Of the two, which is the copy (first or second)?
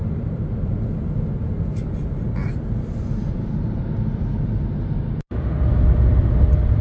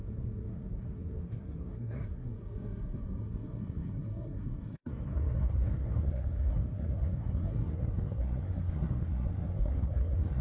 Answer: second